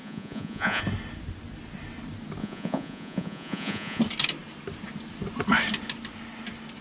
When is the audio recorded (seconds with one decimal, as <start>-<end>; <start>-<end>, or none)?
0.8-2.4; 4.0-6.8